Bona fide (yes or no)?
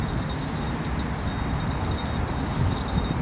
yes